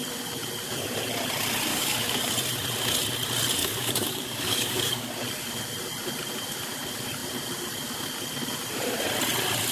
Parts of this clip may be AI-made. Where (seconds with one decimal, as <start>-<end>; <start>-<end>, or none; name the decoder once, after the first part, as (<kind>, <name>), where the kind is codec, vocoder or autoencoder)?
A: 1.7-2.3 (codec, DAC); 3.6-5.1